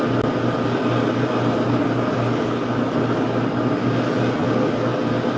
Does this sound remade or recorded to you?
recorded